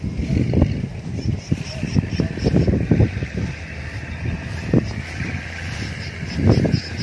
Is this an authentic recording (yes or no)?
yes